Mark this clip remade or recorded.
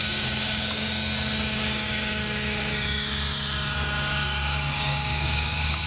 remade